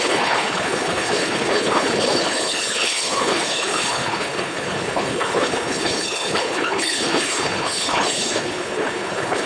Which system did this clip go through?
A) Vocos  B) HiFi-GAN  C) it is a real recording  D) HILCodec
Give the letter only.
D